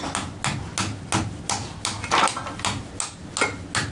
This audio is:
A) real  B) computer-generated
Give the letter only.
A